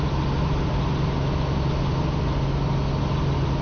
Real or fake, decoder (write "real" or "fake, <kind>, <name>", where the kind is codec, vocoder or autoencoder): real